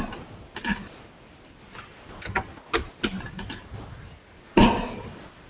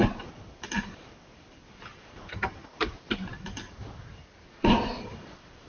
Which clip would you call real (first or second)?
first